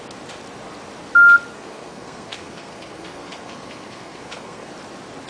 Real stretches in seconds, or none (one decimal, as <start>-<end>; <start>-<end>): 0.0-1.5; 4.7-5.3